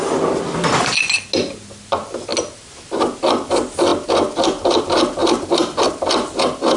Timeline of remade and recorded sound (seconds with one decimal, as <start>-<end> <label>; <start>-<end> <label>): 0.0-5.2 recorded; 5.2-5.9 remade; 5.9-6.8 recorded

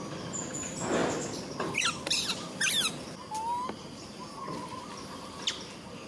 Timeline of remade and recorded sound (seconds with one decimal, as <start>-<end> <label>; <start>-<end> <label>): 0.0-6.1 recorded

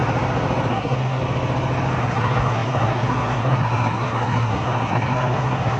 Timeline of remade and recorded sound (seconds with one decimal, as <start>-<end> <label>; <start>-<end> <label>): 0.0-0.7 recorded; 0.7-1.2 remade; 1.2-2.0 recorded; 2.0-5.8 remade

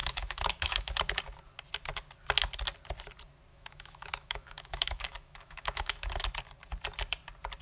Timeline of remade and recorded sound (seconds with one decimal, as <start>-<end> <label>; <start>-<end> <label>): 0.0-0.9 remade; 0.9-3.5 recorded; 3.5-6.1 remade; 6.1-7.6 recorded